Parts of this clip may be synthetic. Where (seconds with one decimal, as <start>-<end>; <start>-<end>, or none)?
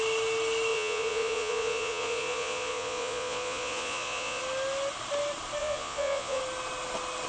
0.7-4.4; 5.6-6.4